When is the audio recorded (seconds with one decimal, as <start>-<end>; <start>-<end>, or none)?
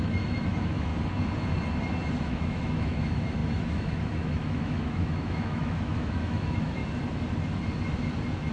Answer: 0.9-2.2; 6.8-8.5